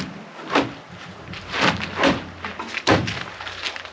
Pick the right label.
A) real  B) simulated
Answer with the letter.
A